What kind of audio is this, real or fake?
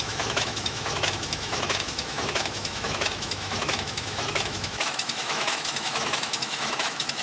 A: fake